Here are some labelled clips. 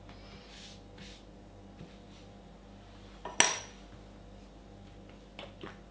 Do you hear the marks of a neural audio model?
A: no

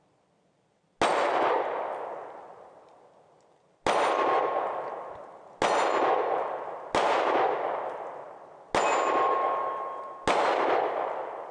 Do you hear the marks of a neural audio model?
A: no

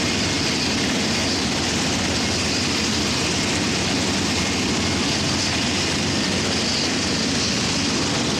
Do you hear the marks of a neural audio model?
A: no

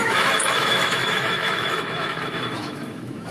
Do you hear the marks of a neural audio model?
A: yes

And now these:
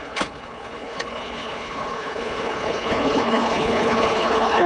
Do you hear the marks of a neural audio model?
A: yes